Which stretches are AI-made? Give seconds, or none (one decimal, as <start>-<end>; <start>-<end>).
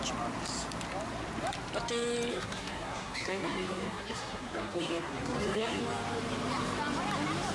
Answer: 2.3-5.8